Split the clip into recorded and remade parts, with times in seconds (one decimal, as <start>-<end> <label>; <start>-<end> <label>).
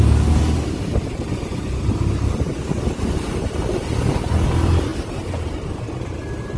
0.0-6.6 recorded